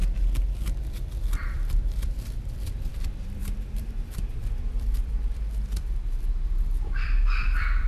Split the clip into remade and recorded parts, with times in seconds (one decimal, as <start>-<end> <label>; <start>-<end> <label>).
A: 0.0-7.9 remade